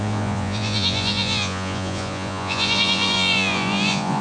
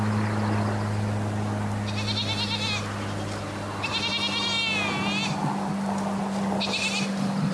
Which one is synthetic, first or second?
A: first